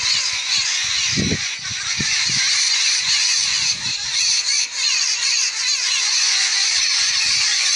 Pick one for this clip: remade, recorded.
remade